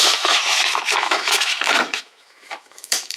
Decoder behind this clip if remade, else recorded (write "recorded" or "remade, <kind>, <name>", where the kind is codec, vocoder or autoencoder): remade, autoencoder, DAC-VAE